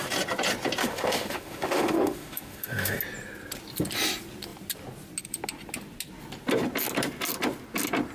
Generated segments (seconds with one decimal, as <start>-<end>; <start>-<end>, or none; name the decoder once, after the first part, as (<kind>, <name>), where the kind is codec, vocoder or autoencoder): 0.8-3.0 (autoencoder, DAC-VAE)